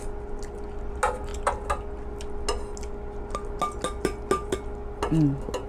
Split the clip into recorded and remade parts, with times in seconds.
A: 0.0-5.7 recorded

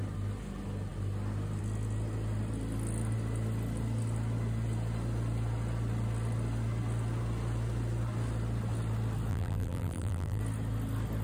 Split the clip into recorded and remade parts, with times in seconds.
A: 0.0-9.3 recorded; 9.3-10.4 remade; 10.4-11.2 recorded

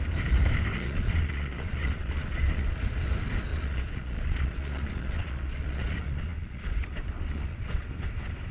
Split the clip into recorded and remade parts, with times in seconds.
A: 0.0-0.7 recorded; 0.7-3.0 remade; 3.0-3.5 recorded; 3.5-7.9 remade; 7.9-8.5 recorded

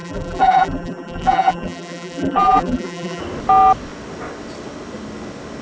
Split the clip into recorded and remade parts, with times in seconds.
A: 0.0-3.2 remade; 3.2-5.6 recorded

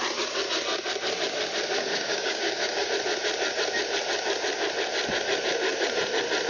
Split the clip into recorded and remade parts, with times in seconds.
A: 0.0-1.9 recorded; 1.9-2.9 remade; 2.9-6.5 recorded

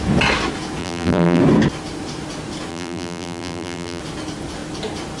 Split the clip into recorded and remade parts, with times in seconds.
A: 0.0-0.8 recorded; 0.8-1.4 remade; 1.4-2.7 recorded; 2.7-4.0 remade; 4.0-5.2 recorded

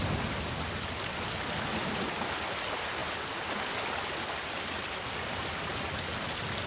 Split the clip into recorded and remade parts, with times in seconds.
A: 0.0-6.7 recorded

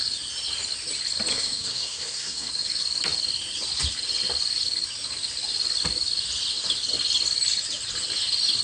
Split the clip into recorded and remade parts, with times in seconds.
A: 0.0-1.3 recorded; 1.3-2.5 remade; 2.5-8.6 recorded